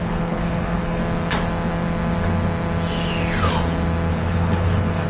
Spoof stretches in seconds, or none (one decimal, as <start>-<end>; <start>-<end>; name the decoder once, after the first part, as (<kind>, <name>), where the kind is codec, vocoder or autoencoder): 0.0-1.0 (codec, HILCodec); 4.1-5.1